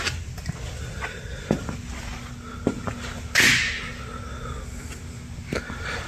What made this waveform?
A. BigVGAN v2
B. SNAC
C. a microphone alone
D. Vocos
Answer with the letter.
C